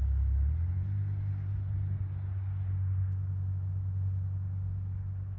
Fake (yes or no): no